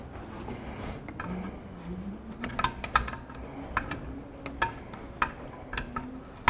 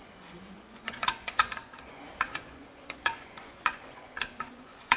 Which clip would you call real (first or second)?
first